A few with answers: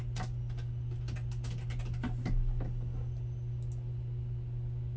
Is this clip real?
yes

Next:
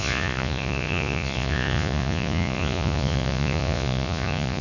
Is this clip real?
no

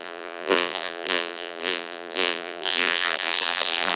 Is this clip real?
no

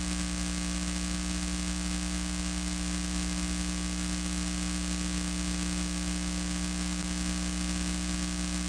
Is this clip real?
yes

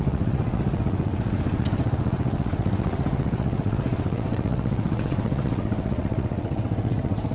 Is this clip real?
no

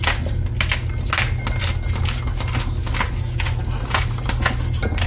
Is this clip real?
yes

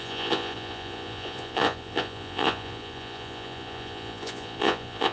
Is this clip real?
no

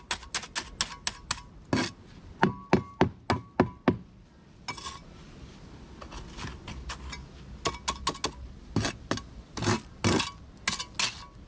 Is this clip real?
yes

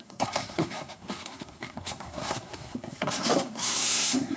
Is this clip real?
no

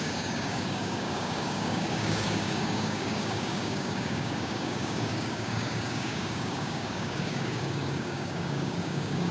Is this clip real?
no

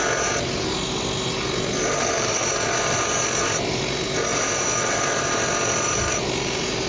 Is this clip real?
yes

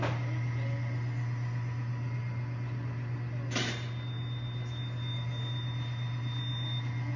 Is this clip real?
yes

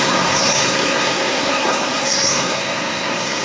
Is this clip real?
no